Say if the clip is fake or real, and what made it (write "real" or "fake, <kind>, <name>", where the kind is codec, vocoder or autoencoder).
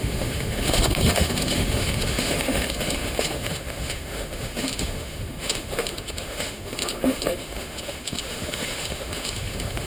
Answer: fake, autoencoder, DAC-VAE